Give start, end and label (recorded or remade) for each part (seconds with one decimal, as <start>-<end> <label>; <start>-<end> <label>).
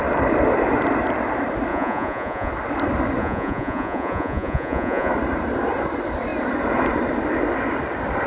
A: 0.0-1.7 recorded; 1.7-2.5 remade; 2.5-3.2 recorded; 3.2-5.1 remade; 5.1-8.3 recorded